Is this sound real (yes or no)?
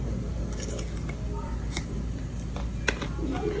yes